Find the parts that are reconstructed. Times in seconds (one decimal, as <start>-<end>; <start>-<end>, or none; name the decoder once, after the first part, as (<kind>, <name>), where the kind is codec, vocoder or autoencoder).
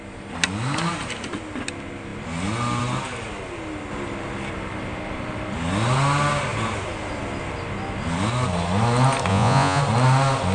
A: 9.3-9.8 (vocoder, Vocos)